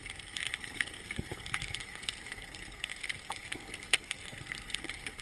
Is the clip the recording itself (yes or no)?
no